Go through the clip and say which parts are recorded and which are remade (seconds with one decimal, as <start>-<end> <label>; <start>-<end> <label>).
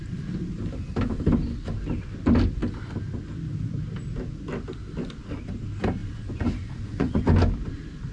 0.0-6.0 recorded; 6.0-7.2 remade; 7.2-8.1 recorded